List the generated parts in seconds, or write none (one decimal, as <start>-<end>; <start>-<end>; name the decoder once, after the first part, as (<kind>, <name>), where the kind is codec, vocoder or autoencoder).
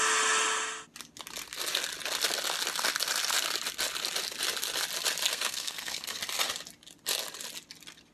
5.3-6.2 (codec, SNAC)